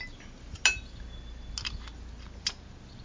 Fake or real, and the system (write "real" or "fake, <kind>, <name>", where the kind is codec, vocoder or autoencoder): real